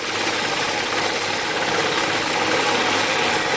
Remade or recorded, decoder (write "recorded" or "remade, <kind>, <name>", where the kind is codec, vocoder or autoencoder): recorded